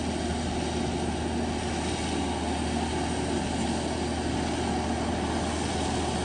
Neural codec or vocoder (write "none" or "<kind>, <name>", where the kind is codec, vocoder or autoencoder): none